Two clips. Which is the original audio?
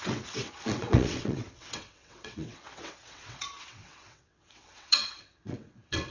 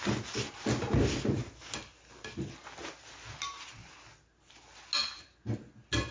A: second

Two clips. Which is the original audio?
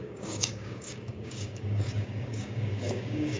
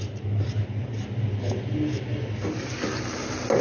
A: second